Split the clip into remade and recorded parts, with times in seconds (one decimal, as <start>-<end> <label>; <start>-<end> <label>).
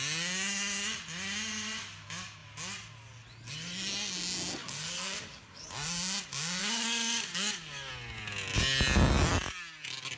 0.0-4.6 recorded; 4.6-5.6 remade; 5.6-6.6 recorded; 6.6-7.9 remade; 7.9-10.2 recorded